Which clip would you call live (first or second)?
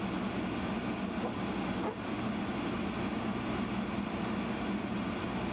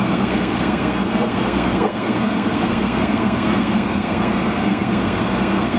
first